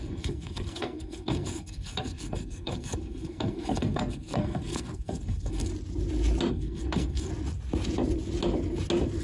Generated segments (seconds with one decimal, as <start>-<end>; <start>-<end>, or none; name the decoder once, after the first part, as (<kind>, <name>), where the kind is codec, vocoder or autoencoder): 0.0-5.7 (codec, SNAC); 6.5-7.3